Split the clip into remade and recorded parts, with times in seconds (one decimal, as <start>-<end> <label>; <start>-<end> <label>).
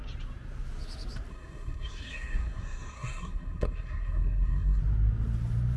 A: 0.0-1.3 recorded; 1.3-4.8 remade; 4.8-5.8 recorded